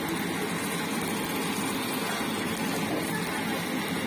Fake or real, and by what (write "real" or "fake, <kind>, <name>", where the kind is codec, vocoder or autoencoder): real